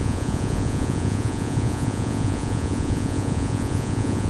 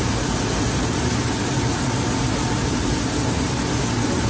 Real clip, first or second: second